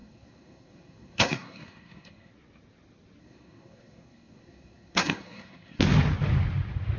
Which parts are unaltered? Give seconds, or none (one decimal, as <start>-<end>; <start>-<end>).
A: 2.3-3.2; 5.8-7.0